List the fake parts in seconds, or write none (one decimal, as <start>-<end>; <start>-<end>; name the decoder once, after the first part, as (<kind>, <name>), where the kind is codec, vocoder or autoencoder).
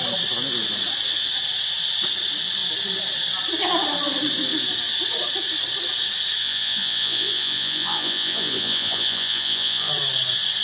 6.4-9.9 (vocoder, Vocos)